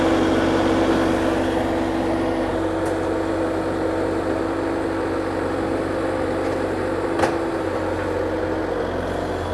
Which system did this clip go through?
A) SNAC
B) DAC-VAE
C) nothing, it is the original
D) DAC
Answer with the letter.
C